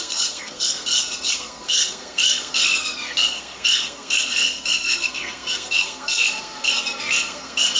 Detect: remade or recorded remade